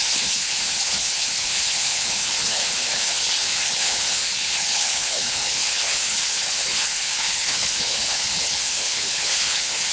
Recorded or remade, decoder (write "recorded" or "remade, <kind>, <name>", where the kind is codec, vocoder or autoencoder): remade, codec, HILCodec